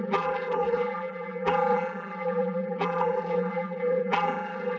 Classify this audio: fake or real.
fake